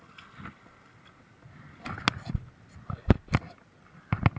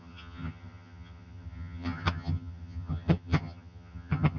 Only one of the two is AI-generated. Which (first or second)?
second